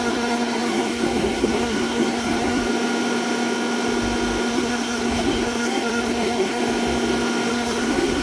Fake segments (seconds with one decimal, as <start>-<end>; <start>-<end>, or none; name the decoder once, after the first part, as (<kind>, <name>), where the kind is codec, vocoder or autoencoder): 0.0-2.6 (codec, SNAC); 4.5-6.6; 7.5-8.2